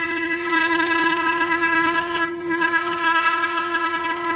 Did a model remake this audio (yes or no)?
yes